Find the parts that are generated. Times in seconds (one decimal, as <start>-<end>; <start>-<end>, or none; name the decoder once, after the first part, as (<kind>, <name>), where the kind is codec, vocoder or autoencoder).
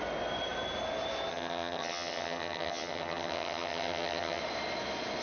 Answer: 1.3-4.4 (vocoder, HiFi-GAN)